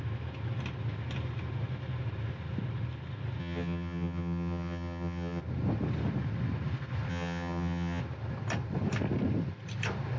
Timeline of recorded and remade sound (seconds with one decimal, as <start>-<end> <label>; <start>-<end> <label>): 0.0-3.4 recorded; 3.4-5.4 remade; 5.4-7.1 recorded; 7.1-8.0 remade; 8.0-10.2 recorded